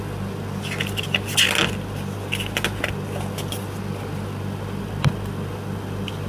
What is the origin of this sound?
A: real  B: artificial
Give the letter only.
A